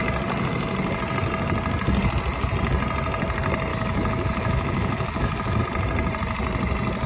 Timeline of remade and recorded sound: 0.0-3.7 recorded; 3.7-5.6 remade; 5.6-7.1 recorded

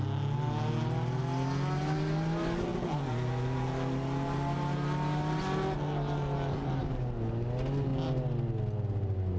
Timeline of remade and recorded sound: 0.0-9.4 recorded

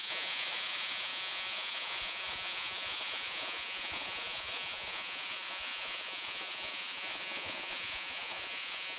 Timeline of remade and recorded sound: 0.0-9.0 remade

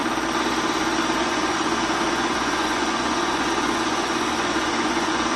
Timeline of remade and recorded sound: 0.0-1.2 recorded; 1.2-5.4 remade

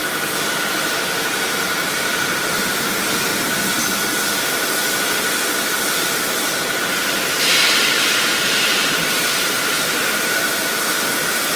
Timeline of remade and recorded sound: 0.0-0.7 recorded; 0.7-3.3 remade; 3.3-7.4 recorded; 7.4-11.6 remade